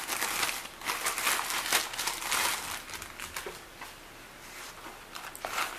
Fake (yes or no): no